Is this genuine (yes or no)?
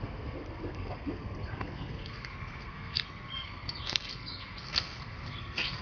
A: no